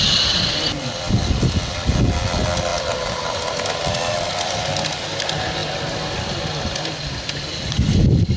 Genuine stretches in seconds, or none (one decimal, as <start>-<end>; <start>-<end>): 0.0-8.4